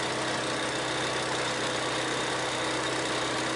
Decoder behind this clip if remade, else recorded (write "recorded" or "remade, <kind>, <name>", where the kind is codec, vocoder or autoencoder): recorded